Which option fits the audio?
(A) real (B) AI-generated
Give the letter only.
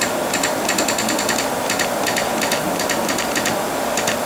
A